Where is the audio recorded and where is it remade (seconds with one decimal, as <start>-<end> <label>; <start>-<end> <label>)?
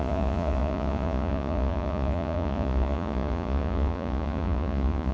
0.0-5.1 remade